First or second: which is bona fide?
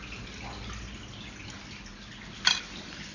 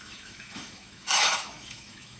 first